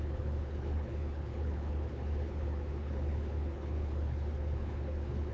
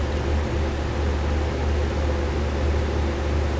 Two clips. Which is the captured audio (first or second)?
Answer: second